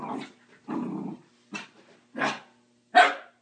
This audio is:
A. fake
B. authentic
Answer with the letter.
B